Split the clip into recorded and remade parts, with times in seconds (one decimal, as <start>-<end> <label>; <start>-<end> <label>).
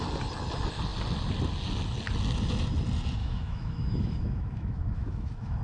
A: 0.0-3.2 recorded; 3.2-5.6 remade